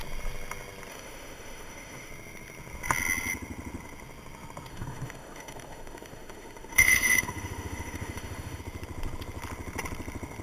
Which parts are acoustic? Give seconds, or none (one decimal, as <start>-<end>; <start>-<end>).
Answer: 0.0-0.9; 2.1-4.7; 8.6-10.4